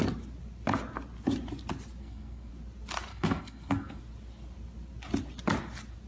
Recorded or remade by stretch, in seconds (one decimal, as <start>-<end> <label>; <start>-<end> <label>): 0.0-2.0 recorded; 2.0-2.5 remade; 2.5-3.1 recorded; 3.1-4.0 remade; 4.0-6.1 recorded